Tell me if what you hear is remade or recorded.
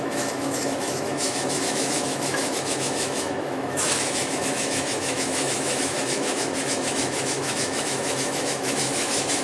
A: remade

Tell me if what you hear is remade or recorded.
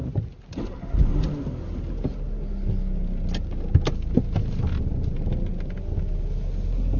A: recorded